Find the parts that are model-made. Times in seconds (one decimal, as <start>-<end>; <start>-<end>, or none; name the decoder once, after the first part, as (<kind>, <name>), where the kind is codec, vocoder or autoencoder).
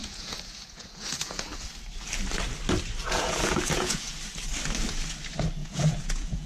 0.0-1.5 (vocoder, Vocos); 3.0-4.1; 5.6-6.5